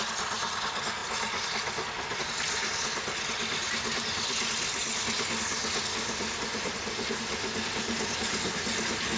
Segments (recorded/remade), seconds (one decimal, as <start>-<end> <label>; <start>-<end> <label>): 0.0-9.2 recorded